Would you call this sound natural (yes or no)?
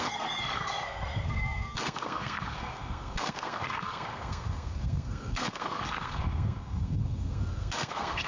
no